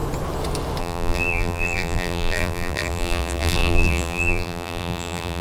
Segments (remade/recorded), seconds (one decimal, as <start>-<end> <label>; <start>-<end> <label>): 0.0-0.8 recorded; 0.8-5.4 remade